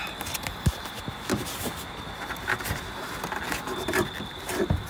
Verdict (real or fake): real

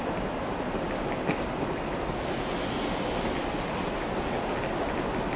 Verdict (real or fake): real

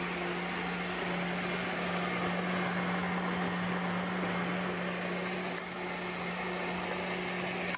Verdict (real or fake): real